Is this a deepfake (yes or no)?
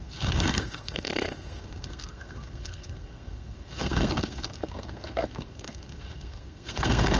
yes